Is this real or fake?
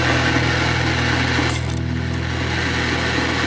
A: real